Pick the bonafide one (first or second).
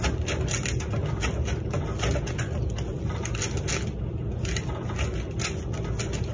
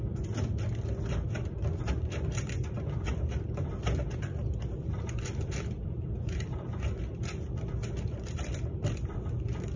first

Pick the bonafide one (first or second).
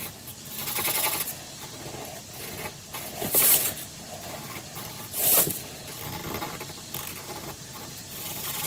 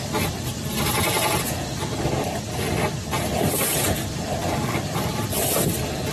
first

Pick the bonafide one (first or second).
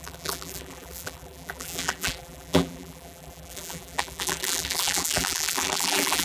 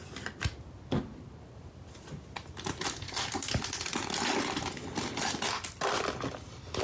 second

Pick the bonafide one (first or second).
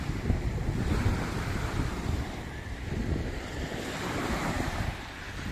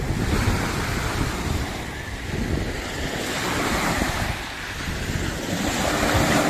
second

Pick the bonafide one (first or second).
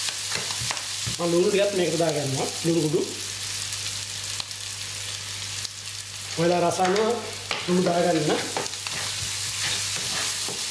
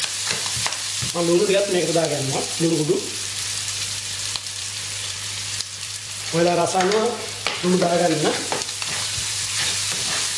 first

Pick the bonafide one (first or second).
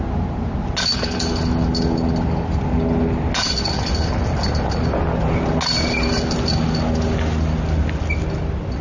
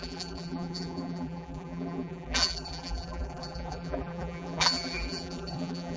first